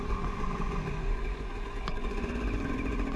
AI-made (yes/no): yes